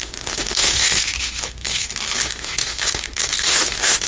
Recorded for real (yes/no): no